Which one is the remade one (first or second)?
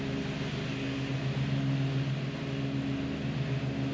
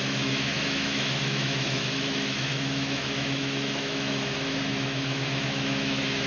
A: second